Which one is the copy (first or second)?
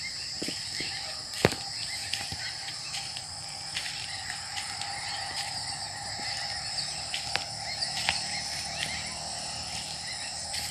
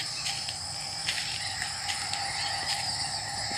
first